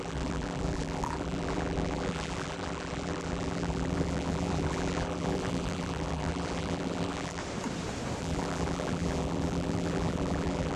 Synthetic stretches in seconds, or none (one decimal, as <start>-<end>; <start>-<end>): 0.0-7.4; 8.2-10.8